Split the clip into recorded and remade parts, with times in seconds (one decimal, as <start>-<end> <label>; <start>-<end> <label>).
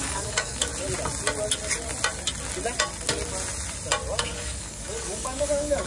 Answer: 0.0-0.7 remade; 0.7-4.2 recorded; 4.2-5.9 remade